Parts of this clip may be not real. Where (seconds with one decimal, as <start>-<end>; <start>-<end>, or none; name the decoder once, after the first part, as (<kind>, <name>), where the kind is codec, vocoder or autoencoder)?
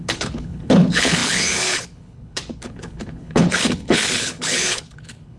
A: 0.0-5.4 (codec, HILCodec)